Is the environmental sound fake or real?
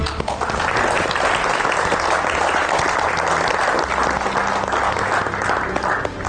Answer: real